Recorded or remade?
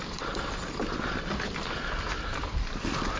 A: recorded